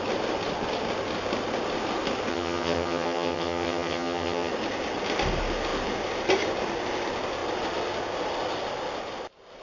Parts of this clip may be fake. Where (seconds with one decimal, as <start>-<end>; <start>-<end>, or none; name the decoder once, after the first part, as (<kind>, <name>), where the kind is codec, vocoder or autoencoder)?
2.3-4.5 (vocoder, HiFi-GAN)